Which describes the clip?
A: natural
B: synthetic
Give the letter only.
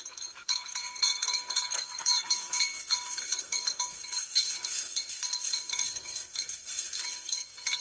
B